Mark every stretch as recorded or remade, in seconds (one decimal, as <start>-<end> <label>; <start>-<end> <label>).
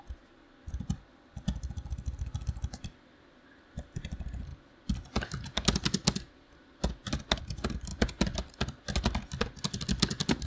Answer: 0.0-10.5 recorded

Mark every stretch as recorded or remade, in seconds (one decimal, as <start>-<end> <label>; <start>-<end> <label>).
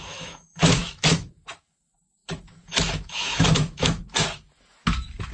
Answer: 0.0-5.3 remade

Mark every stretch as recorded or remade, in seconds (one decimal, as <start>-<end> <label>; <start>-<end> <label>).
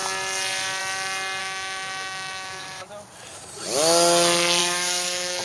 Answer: 0.0-1.4 recorded; 1.4-2.9 remade; 2.9-4.6 recorded; 4.6-5.4 remade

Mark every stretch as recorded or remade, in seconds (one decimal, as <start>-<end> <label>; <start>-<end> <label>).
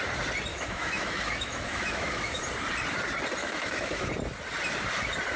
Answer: 0.0-0.5 recorded; 0.5-2.4 remade; 2.4-3.4 recorded; 3.4-4.1 remade; 4.1-5.4 recorded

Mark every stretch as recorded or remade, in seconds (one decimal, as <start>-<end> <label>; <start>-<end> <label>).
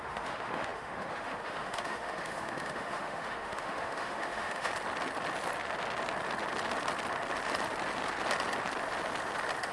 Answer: 0.0-4.7 remade; 4.7-9.7 recorded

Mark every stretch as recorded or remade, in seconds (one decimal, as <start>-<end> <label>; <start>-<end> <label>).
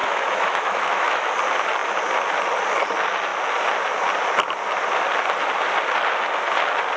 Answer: 0.0-1.3 remade; 1.3-7.0 recorded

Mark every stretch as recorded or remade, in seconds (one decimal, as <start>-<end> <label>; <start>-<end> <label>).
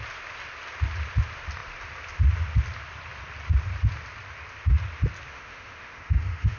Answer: 0.0-5.3 recorded; 5.3-6.6 remade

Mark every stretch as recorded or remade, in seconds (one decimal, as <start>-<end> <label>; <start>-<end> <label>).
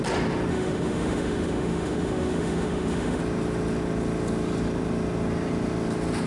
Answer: 0.0-0.5 recorded; 0.5-3.2 remade; 3.2-6.3 recorded